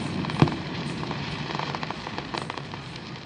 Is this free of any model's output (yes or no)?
no